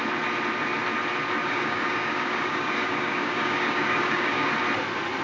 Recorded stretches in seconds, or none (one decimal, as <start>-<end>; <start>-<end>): 0.0-1.4; 4.5-5.2